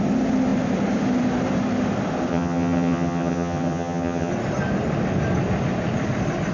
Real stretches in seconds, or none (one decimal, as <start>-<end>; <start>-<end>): 0.0-2.3; 4.3-6.5